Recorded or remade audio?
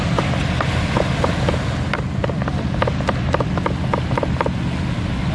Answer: recorded